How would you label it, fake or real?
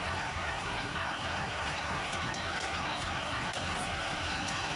fake